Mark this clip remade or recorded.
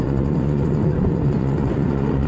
remade